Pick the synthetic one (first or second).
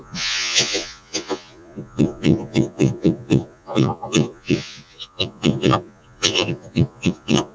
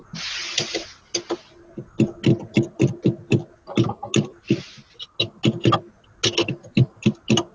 first